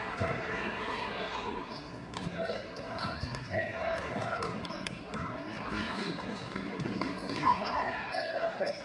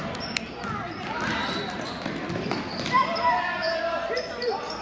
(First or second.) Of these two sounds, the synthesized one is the first